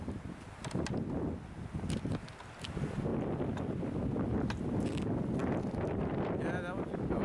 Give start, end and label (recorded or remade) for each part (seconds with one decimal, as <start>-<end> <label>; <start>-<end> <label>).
0.0-5.4 recorded; 5.4-6.4 remade; 6.4-7.2 recorded